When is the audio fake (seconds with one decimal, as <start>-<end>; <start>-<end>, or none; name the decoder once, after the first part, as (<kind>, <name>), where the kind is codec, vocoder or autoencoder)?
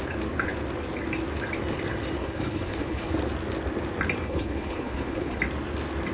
2.2-3.1 (codec, HILCodec); 4.2-5.4